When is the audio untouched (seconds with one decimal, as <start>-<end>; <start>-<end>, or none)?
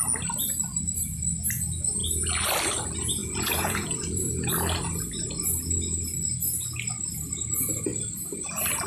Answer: 0.0-3.2; 4.3-8.9